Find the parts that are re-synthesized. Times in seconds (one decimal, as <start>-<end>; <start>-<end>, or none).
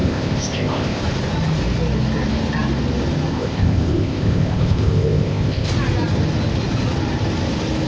0.0-1.0; 3.3-5.7